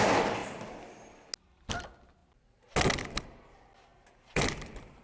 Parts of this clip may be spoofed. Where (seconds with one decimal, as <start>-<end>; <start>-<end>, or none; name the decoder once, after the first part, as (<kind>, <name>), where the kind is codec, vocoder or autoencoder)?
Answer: 0.4-1.3 (vocoder, BigVGAN v2); 3.9-5.0